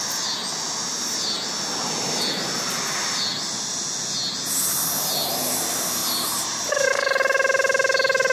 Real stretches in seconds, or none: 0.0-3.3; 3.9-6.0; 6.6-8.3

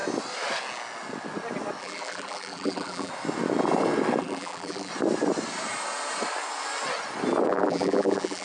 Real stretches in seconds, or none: 0.0-1.8; 3.1-4.2; 4.9-7.5